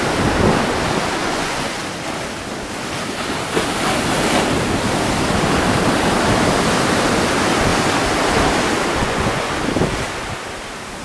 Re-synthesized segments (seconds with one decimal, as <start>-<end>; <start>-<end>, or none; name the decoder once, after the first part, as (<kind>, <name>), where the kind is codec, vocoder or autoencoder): 1.2-1.8 (vocoder, Vocos); 9.0-9.5